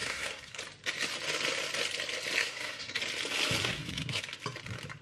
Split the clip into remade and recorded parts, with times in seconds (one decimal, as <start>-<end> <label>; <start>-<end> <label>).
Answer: 0.0-0.6 remade; 0.6-2.4 recorded; 2.4-3.0 remade; 3.0-3.6 recorded; 3.6-4.2 remade; 4.2-5.0 recorded